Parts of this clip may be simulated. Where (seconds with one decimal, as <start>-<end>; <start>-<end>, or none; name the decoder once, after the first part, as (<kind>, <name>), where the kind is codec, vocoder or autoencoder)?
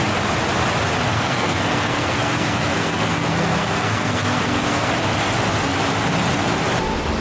1.1-4.9 (codec, SNAC)